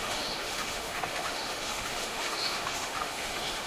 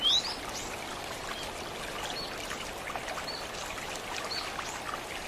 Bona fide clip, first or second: second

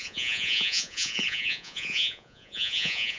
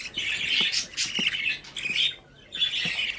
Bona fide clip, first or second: second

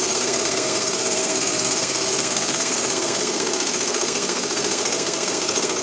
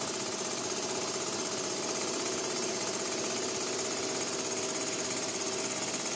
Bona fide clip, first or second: second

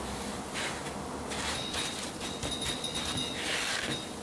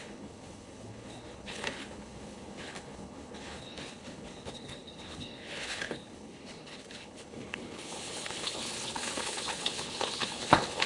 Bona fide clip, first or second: first